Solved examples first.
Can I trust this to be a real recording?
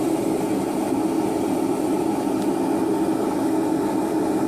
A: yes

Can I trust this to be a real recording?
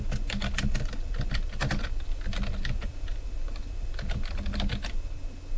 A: yes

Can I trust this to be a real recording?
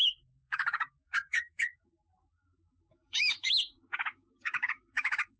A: no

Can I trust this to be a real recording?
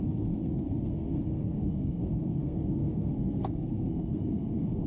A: no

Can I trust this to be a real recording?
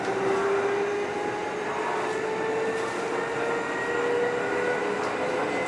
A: yes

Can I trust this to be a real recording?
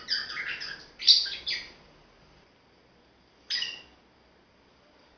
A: yes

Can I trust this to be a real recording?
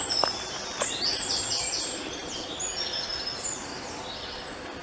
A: yes